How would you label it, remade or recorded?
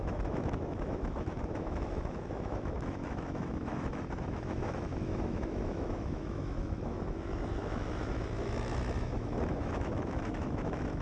remade